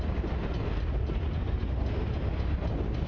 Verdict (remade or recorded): recorded